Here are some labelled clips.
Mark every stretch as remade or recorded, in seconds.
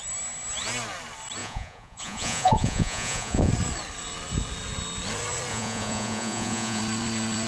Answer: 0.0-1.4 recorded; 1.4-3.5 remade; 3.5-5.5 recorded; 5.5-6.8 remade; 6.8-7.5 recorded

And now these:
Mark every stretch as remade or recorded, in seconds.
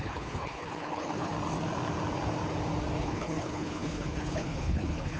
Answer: 0.0-1.3 remade; 1.3-3.0 recorded; 3.0-5.2 remade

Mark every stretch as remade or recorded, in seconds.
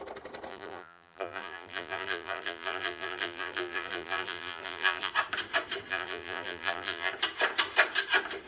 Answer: 0.0-0.5 recorded; 0.5-5.1 remade; 5.1-5.9 recorded; 5.9-7.1 remade; 7.1-8.5 recorded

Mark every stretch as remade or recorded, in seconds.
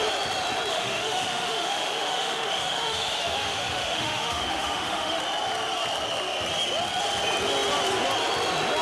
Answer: 0.0-0.7 recorded; 0.7-5.2 remade; 5.2-8.8 recorded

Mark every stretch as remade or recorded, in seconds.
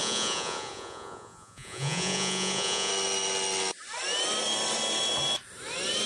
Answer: 0.0-2.9 remade; 2.9-6.1 recorded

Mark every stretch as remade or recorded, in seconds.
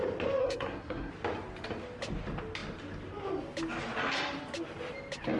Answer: 0.0-0.4 recorded; 0.4-1.1 remade; 1.1-5.4 recorded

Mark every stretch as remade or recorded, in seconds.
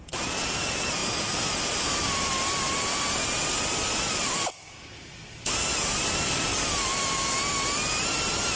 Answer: 0.0-8.6 recorded